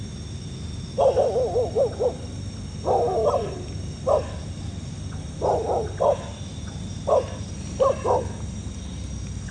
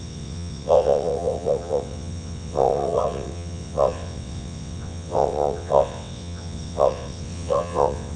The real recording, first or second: first